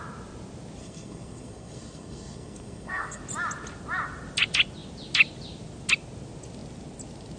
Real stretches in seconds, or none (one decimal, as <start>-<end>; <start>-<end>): 0.0-0.8; 3.2-7.4